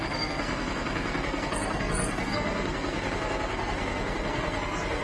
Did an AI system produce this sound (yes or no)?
yes